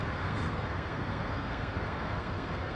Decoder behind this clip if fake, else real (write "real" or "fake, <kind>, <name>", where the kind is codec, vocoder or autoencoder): fake, codec, SNAC